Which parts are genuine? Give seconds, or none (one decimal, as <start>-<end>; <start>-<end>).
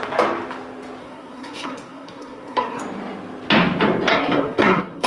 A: 0.0-1.0; 2.8-4.1